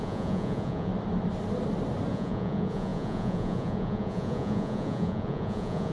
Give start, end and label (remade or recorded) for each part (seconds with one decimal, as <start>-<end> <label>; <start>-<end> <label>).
0.0-0.9 remade; 0.9-2.1 recorded; 2.1-5.9 remade